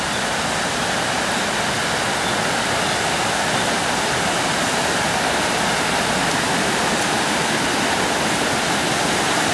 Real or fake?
real